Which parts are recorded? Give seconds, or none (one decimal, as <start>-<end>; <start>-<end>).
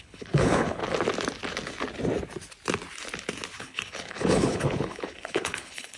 0.8-3.6